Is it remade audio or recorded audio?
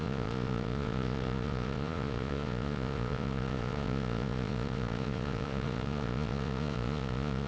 remade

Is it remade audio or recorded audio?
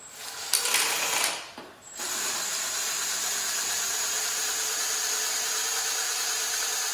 remade